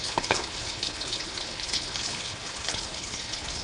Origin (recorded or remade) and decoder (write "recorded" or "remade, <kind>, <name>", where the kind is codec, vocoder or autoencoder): remade, codec, HILCodec